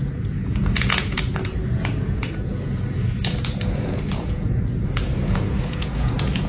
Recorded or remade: remade